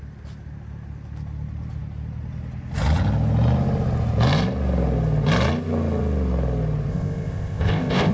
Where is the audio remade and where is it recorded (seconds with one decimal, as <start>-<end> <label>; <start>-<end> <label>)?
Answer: 0.0-6.9 recorded; 6.9-8.1 remade